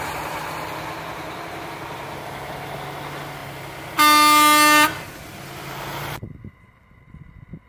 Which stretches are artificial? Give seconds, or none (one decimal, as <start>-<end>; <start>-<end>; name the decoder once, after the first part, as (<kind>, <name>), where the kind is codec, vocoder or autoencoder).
none